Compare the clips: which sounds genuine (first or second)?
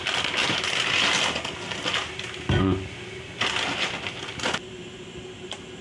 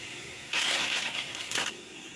first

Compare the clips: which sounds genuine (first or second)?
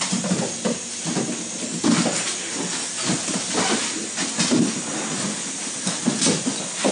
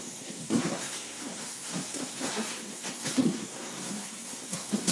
first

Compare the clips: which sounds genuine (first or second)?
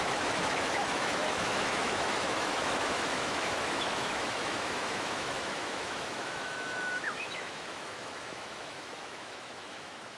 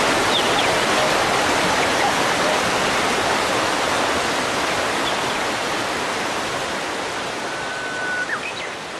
second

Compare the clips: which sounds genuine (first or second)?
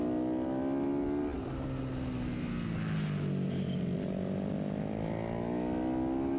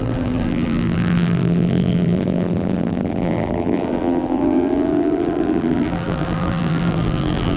first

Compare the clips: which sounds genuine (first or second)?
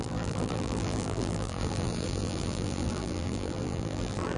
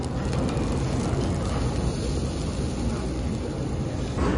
second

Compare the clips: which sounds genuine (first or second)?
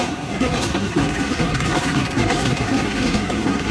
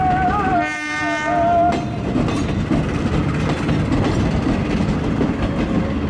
second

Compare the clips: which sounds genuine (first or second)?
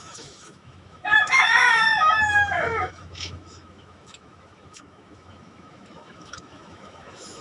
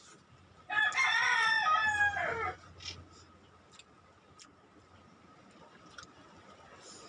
second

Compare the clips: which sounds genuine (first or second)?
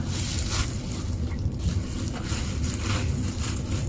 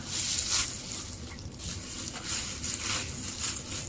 second